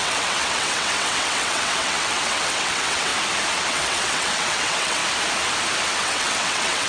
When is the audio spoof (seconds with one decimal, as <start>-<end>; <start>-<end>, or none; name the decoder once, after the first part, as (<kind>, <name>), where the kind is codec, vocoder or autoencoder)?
0.0-3.1 (vocoder, WaveNeXt); 3.7-5.0; 6.0-6.9

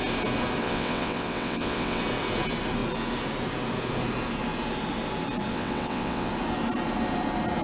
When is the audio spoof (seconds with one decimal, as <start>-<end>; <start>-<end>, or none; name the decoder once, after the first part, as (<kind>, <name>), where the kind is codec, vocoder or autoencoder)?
0.6-2.0 (vocoder, WaveNeXt); 5.5-6.3

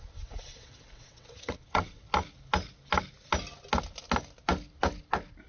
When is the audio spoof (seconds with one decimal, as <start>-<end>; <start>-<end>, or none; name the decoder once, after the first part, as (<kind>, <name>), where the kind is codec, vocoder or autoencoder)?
0.0-2.1 (vocoder, WaveNeXt)

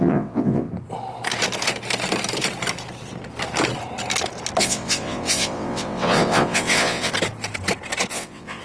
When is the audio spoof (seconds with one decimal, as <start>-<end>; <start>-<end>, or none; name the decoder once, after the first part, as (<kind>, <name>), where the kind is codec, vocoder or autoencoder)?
0.0-0.7 (vocoder, WaveNeXt); 4.6-7.1; 8.1-8.6

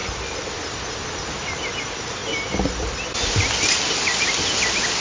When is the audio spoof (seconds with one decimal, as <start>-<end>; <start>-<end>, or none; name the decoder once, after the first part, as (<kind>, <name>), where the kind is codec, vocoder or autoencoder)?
none

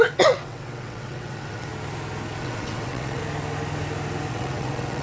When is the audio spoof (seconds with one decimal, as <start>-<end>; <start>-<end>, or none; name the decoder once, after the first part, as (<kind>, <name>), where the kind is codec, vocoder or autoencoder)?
0.0-1.7 (vocoder, WaveNeXt); 2.4-3.2; 4.3-5.0